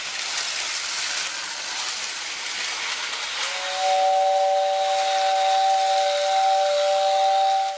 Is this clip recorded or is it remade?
recorded